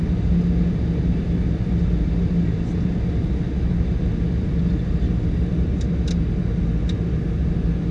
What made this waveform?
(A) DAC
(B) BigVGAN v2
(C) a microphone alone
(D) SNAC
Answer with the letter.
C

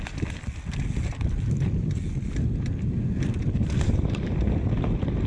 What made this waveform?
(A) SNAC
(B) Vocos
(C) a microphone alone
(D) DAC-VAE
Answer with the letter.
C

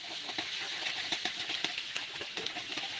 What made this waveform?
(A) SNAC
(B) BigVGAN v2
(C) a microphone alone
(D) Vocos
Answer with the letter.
C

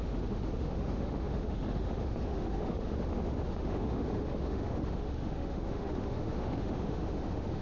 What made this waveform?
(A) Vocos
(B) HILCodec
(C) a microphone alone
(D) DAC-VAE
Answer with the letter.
D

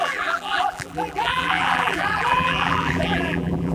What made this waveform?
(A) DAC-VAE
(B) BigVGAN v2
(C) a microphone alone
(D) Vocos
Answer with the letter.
B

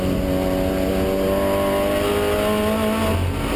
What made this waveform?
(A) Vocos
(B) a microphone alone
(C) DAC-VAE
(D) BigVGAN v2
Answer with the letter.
B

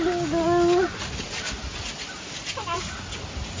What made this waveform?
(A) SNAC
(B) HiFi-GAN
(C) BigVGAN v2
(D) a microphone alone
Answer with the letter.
D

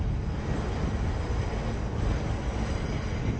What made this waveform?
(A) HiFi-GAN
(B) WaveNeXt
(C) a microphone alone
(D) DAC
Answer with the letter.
C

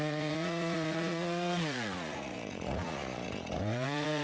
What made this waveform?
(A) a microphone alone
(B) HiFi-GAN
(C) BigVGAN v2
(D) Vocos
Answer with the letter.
D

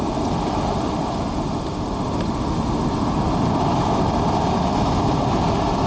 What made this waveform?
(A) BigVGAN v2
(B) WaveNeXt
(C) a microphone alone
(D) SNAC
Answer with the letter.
C